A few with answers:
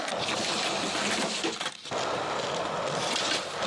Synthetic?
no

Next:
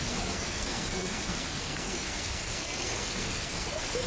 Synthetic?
yes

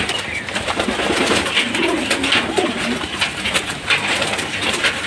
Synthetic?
no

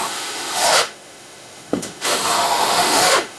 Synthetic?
yes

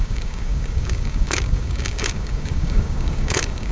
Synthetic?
yes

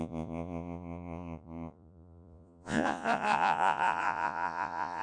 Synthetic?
yes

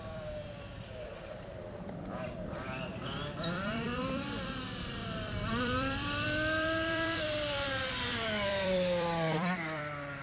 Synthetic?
yes